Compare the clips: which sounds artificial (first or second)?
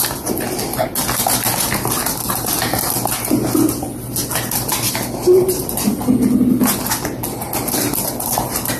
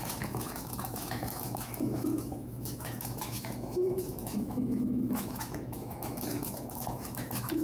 second